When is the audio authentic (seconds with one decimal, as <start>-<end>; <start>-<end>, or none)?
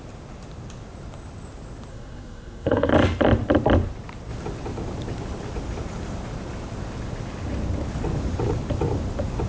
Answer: 0.0-1.9; 2.9-9.5